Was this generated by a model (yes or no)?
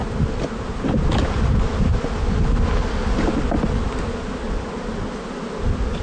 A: no